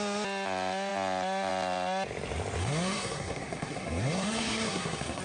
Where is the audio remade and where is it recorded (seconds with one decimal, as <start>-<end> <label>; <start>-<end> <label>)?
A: 0.0-2.6 recorded; 2.6-5.2 remade